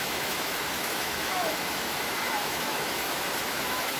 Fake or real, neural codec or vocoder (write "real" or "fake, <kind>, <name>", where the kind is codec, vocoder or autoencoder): fake, autoencoder, DAC-VAE